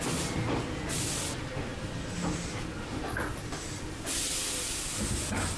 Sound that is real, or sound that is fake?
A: real